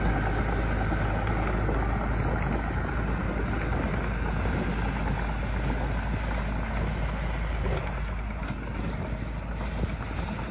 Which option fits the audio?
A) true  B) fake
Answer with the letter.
A